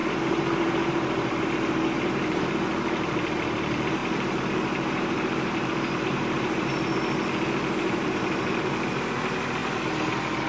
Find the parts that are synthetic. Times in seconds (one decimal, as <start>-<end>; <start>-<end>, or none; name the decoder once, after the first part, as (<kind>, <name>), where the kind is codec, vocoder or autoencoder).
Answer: 0.0-2.5 (vocoder, BigVGAN v2); 4.0-8.6